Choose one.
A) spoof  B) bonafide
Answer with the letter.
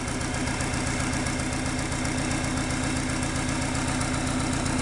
B